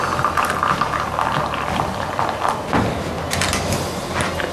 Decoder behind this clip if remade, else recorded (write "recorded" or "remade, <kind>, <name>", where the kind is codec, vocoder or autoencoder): recorded